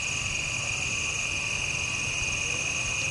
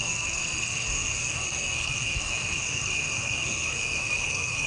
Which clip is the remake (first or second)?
second